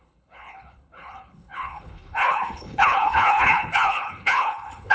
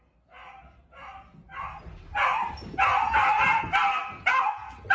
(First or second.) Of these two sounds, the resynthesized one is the first